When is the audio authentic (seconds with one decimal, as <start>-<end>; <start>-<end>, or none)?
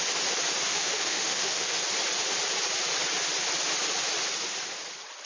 0.0-0.7; 1.8-5.3